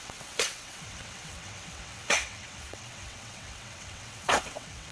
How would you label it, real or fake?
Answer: fake